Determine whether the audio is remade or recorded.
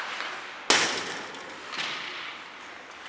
recorded